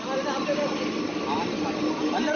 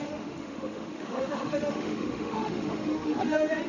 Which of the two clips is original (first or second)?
first